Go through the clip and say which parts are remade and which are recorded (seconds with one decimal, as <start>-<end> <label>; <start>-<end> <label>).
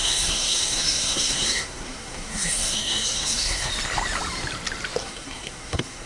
0.0-3.7 remade; 3.7-5.0 recorded; 5.0-6.1 remade